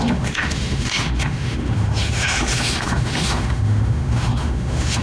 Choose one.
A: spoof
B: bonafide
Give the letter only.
A